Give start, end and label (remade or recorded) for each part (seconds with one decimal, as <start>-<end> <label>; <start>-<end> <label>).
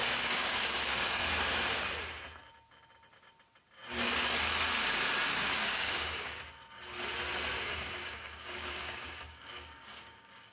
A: 0.0-1.2 remade; 1.2-5.4 recorded; 5.4-6.4 remade; 6.4-7.5 recorded; 7.5-10.5 remade